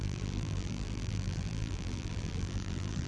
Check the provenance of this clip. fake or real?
fake